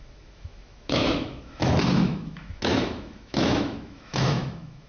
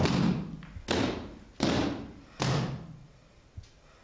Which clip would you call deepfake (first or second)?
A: first